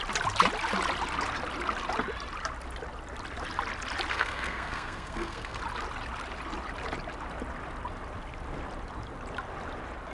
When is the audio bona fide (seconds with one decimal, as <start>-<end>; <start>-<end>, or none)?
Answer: 0.0-4.1; 5.6-10.1